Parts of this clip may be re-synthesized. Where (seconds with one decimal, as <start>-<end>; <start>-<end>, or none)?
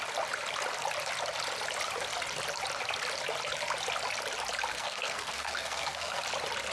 4.7-6.2